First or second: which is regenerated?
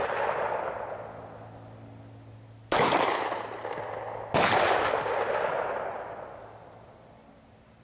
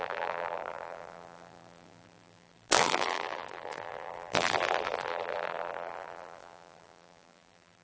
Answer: second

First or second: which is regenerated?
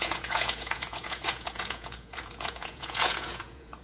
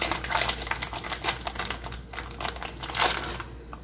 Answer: first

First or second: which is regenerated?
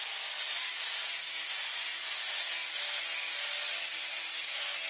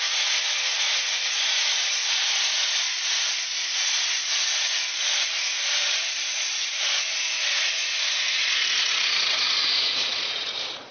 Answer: second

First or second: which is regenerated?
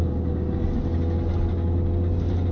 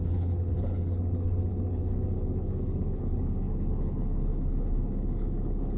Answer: second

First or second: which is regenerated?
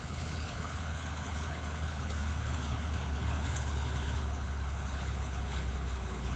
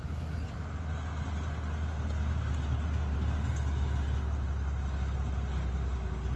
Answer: first